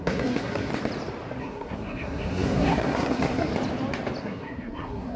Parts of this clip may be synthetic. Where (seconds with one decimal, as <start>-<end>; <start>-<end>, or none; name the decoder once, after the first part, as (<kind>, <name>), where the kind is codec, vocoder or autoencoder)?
0.0-0.7 (codec, SNAC); 1.4-3.5; 4.2-5.2